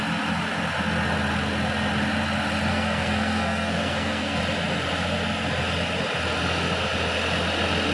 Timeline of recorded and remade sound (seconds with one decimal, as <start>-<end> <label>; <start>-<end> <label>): 0.0-2.7 recorded; 2.7-4.4 remade; 4.4-7.9 recorded